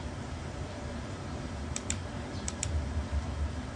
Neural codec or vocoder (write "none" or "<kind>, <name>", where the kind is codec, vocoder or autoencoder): vocoder, BigVGAN v2